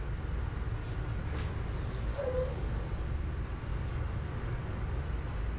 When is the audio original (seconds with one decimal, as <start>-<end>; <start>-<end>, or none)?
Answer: 0.0-2.1; 2.8-3.7; 5.0-5.6